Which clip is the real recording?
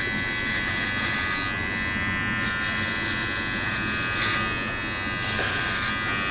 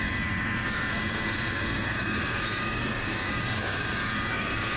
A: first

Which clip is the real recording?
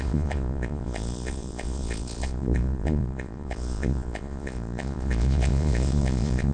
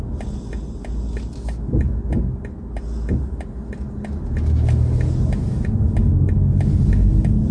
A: second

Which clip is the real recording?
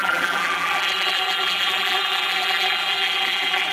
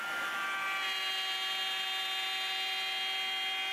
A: second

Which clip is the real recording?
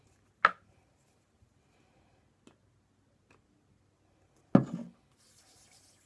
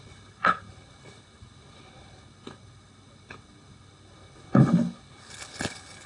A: first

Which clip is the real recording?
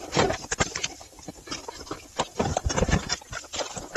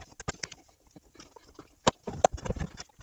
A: second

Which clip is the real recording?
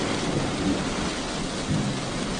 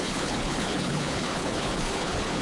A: first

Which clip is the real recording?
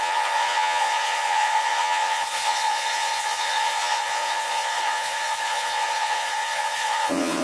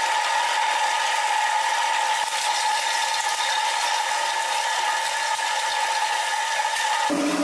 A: second